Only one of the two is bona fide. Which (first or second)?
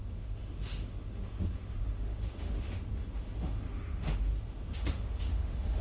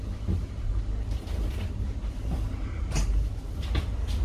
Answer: second